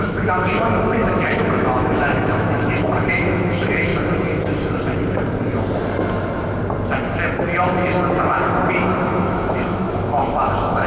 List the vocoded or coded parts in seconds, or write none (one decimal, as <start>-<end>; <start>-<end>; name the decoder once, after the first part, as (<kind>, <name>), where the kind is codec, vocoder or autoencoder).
0.0-3.9 (autoencoder, DAC-VAE); 8.7-10.9